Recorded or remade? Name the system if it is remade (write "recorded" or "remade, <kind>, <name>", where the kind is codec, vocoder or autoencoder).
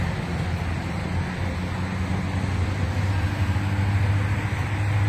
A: recorded